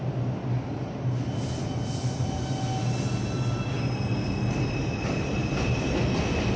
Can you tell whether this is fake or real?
real